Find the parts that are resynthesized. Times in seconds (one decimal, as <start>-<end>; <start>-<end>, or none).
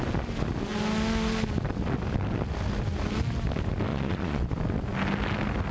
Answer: 3.9-4.5